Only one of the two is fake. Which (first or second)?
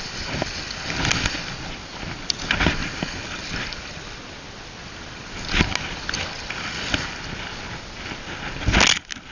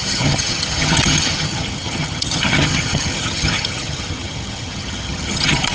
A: second